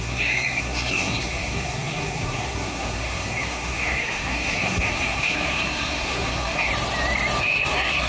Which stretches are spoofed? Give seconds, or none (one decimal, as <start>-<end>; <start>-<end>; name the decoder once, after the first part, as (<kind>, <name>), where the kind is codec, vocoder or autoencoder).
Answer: 0.0-6.7 (codec, SNAC); 7.4-8.1